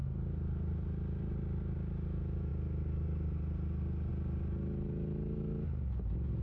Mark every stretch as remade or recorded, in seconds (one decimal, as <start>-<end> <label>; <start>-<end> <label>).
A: 0.0-6.4 recorded